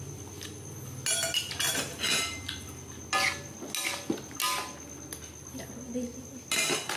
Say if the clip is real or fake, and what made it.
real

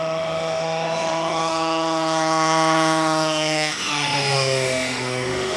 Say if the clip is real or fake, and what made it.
fake, autoencoder, DAC-VAE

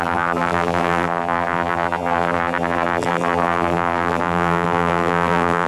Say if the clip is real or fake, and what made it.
fake, vocoder, BigVGAN v2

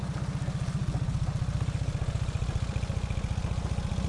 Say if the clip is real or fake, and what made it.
real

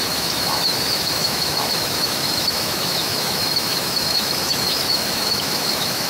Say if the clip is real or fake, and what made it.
fake, autoencoder, DAC-VAE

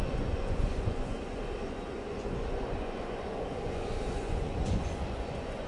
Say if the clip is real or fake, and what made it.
fake, vocoder, Vocos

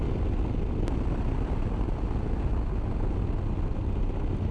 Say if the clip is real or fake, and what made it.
real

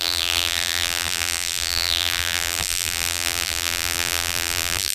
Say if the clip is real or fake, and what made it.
fake, vocoder, BigVGAN v2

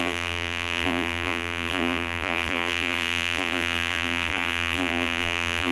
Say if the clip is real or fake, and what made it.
fake, vocoder, BigVGAN v2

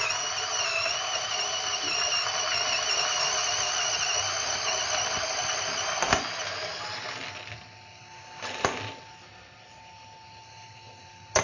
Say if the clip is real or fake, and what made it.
real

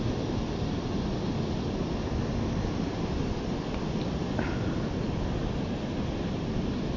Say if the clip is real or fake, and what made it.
real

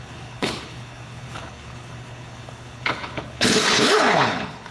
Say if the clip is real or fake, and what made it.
fake, codec, HILCodec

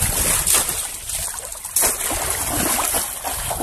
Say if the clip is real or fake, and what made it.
real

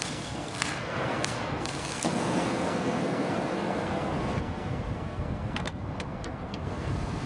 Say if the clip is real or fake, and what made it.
fake, codec, SNAC